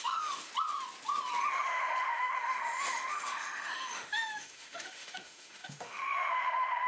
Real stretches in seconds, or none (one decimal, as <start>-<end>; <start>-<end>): 0.5-1.5

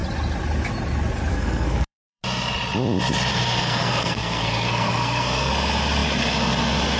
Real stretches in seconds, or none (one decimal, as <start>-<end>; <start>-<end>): 0.0-1.3; 2.2-3.3; 5.5-7.0

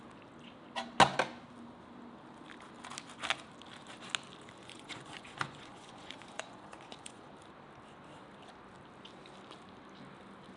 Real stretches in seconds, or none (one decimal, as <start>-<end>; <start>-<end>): 0.0-4.6; 7.3-10.6

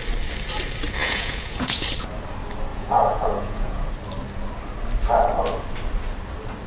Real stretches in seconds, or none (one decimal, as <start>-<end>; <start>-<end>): 0.0-1.0; 1.8-2.7; 3.9-6.7